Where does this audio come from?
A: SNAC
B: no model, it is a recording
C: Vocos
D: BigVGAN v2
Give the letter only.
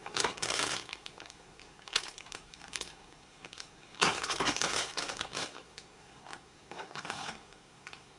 A